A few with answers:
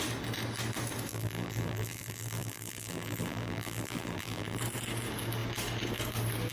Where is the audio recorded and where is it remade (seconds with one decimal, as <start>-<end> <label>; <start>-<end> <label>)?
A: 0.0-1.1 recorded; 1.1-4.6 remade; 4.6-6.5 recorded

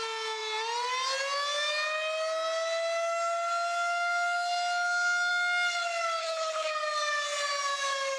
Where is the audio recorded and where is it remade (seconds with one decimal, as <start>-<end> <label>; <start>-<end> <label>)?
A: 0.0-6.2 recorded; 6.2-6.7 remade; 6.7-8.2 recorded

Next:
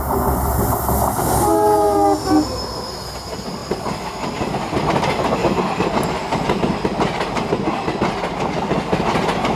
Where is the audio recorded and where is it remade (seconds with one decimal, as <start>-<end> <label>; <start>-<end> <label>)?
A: 0.0-5.4 recorded; 5.4-7.5 remade; 7.5-9.6 recorded

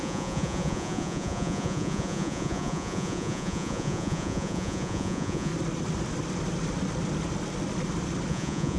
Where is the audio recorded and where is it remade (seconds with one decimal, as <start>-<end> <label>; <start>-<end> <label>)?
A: 0.0-5.5 remade; 5.5-8.3 recorded; 8.3-8.8 remade